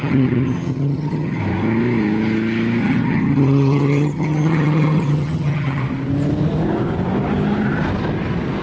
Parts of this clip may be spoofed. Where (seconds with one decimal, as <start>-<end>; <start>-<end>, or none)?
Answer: 0.0-1.4; 2.8-5.8